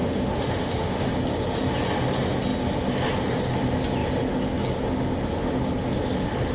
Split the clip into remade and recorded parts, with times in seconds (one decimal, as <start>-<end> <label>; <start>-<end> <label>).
0.0-1.1 remade; 1.1-6.5 recorded